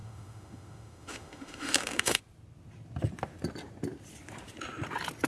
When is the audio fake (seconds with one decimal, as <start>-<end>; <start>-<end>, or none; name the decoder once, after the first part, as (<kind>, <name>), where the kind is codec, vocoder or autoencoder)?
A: 0.0-2.2 (autoencoder, DAC-VAE)